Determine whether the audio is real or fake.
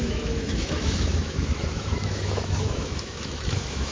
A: fake